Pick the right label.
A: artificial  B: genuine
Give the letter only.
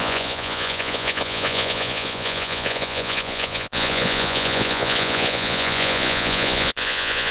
A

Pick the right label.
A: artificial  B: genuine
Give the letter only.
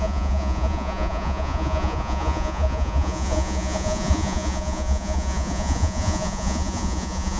A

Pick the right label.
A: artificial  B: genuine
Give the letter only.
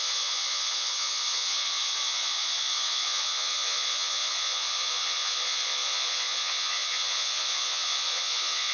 A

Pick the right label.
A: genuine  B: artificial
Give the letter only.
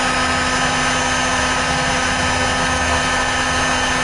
A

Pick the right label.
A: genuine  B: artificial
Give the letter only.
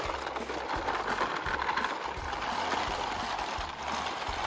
A